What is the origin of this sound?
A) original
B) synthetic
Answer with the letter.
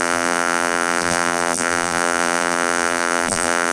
B